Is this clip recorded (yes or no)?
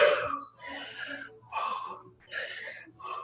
yes